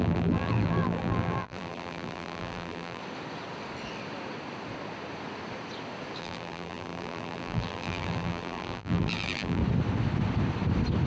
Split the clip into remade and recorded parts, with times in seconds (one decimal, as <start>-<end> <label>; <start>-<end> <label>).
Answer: 0.0-3.0 remade; 3.0-6.2 recorded; 6.2-9.6 remade; 9.6-11.1 recorded